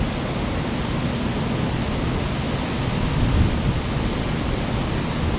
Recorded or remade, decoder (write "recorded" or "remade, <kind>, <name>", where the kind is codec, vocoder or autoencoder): recorded